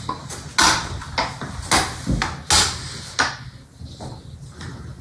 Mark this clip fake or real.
real